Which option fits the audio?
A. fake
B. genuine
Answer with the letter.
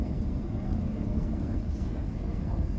A